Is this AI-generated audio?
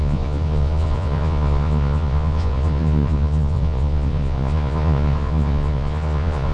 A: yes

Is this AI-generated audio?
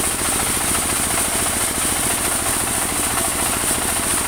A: no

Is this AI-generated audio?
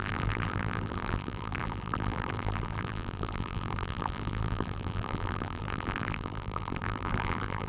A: yes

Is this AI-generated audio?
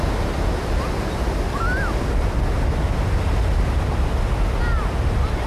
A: no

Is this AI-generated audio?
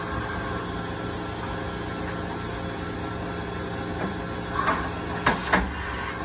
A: no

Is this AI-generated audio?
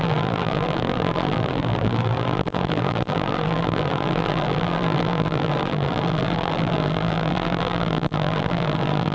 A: yes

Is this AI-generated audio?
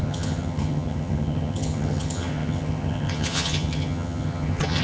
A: yes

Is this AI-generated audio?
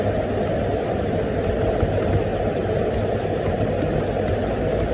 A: no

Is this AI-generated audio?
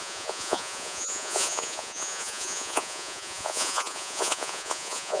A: yes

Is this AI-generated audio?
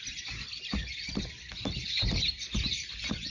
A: no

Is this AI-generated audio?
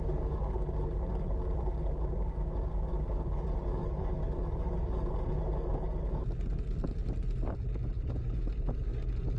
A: no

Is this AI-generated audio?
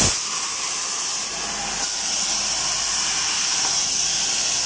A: no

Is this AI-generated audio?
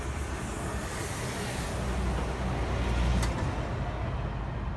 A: no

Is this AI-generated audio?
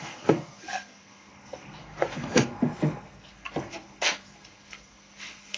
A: yes